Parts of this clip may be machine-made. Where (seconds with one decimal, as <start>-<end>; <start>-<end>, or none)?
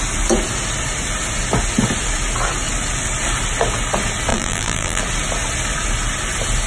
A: 4.3-5.0